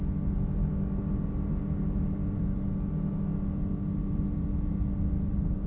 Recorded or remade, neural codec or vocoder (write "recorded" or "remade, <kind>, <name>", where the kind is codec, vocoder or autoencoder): recorded